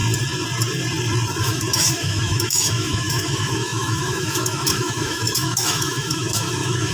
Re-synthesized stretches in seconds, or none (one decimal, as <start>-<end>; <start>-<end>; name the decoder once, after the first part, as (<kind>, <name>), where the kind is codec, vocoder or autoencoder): 1.4-6.9 (autoencoder, DAC-VAE)